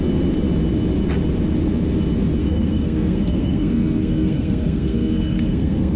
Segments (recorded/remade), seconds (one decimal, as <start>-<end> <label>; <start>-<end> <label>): 0.0-2.4 recorded; 2.4-6.0 remade